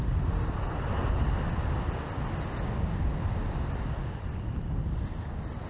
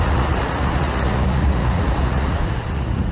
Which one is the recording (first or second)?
first